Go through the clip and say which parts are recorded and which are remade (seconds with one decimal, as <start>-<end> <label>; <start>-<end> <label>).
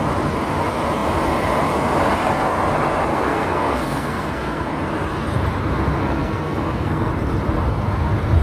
0.0-3.1 recorded; 3.1-4.7 remade; 4.7-6.0 recorded; 6.0-7.1 remade; 7.1-8.4 recorded